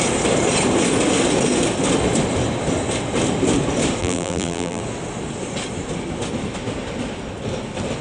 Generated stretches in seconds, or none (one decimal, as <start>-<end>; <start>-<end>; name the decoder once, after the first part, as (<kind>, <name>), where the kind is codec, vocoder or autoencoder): 4.0-4.8 (vocoder, BigVGAN v2)